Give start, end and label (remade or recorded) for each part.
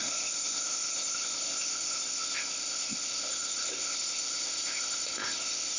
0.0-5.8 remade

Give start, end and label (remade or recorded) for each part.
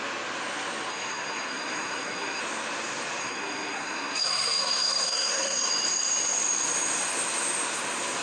0.0-0.9 recorded; 0.9-2.4 remade; 2.4-3.2 recorded; 3.2-5.7 remade; 5.7-8.2 recorded